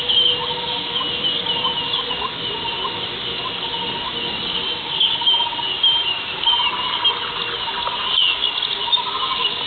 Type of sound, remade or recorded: recorded